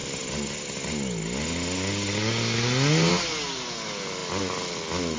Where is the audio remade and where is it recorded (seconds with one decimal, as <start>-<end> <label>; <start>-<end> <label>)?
0.0-5.2 recorded